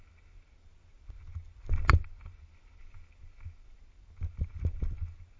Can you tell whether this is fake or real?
real